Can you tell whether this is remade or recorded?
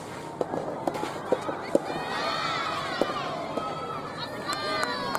recorded